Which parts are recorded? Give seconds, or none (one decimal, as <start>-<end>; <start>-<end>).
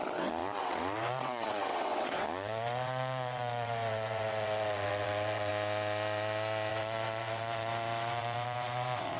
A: 5.5-6.7